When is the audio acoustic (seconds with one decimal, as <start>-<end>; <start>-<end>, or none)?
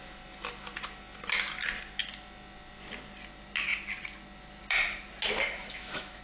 0.0-5.6